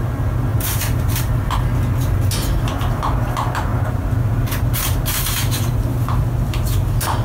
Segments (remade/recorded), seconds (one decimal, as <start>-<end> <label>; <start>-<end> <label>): 0.0-0.5 recorded; 0.5-1.3 remade; 1.3-7.2 recorded